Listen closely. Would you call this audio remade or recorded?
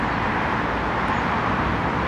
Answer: recorded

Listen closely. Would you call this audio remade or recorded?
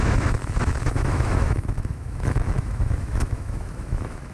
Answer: remade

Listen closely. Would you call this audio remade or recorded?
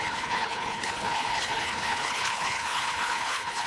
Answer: remade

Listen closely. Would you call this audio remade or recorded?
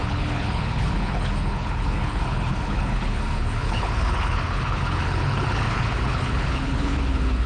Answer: remade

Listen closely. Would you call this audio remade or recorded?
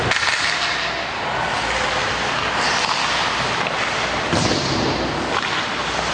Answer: recorded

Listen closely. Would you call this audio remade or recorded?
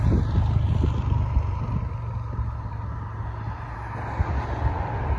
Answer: recorded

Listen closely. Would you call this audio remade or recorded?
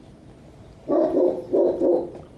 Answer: recorded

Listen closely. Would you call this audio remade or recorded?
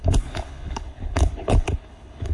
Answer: remade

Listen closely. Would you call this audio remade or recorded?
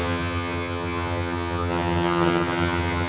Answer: remade